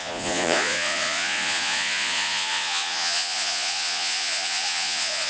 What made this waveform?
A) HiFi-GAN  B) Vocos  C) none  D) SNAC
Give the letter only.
B